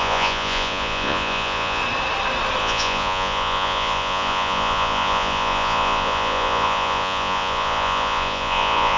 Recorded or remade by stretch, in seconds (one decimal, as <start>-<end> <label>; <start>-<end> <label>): 0.0-1.8 remade; 1.8-2.6 recorded; 2.6-9.0 remade